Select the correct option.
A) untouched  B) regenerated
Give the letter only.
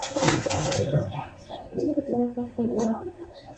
B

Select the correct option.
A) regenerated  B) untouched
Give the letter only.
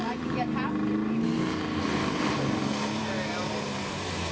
B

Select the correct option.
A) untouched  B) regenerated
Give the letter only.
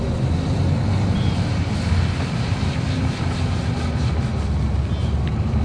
A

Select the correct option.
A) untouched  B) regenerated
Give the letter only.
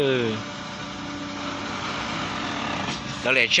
A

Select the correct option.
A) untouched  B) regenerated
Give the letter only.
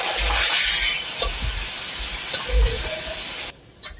A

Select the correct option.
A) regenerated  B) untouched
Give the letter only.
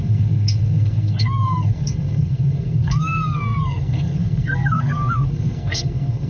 A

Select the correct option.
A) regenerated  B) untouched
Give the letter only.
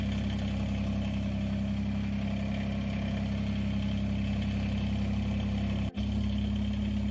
B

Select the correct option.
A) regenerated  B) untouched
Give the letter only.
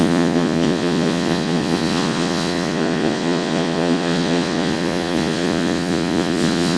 A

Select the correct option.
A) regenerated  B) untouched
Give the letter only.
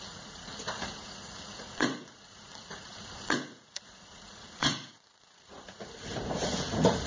A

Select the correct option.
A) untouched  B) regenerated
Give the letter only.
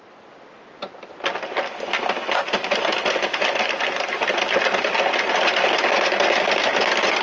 A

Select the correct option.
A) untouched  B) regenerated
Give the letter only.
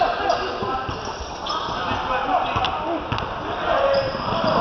A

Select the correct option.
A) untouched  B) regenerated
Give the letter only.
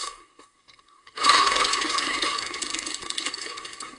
B